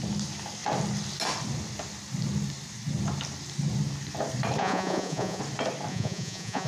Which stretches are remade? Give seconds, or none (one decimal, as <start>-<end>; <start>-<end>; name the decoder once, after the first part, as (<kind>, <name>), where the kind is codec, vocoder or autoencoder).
4.6-5.4 (vocoder, Vocos); 5.9-6.7